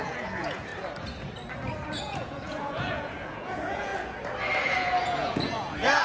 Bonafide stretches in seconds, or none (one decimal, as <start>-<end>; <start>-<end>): 0.7-2.0; 3.9-4.6